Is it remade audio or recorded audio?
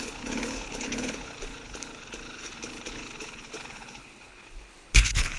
remade